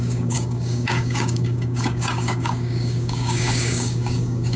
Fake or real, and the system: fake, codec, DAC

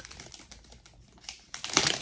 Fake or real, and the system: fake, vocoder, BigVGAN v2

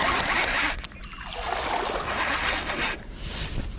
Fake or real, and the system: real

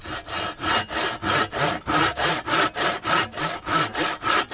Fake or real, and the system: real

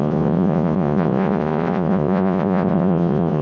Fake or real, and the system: fake, vocoder, Vocos